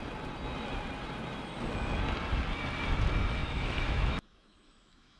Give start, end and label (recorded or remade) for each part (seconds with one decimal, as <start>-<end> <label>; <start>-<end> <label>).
0.0-3.4 recorded; 3.4-5.2 remade